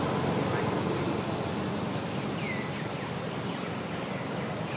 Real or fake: real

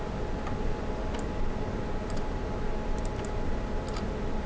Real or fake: real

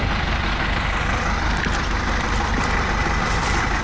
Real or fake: real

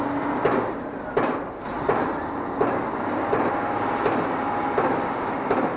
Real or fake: real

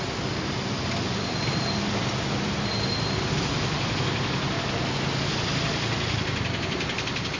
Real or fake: real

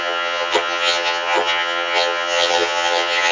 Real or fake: fake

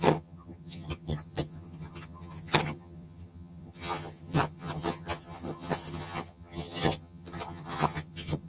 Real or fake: fake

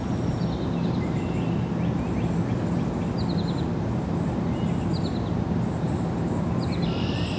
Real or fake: real